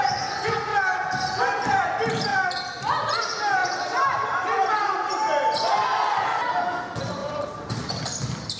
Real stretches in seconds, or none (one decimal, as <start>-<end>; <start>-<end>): 0.0-3.6; 4.7-7.2; 8.1-8.6